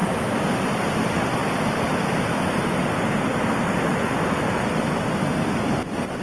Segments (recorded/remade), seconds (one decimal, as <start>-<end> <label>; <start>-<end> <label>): 0.0-6.2 recorded